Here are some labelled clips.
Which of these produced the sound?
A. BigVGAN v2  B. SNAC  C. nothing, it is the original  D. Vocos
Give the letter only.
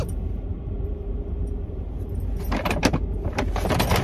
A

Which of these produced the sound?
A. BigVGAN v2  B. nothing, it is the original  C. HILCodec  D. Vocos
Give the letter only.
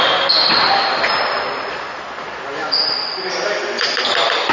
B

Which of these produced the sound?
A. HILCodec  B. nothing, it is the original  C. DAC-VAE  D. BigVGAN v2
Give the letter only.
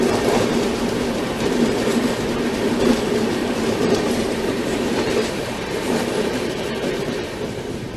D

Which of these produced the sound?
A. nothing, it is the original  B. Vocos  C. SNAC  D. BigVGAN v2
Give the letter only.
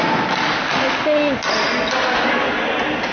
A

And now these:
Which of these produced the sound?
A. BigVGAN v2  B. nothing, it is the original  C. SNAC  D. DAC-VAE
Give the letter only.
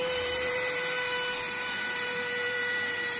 A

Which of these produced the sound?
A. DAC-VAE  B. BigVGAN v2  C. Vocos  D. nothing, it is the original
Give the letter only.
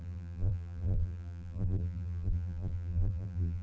B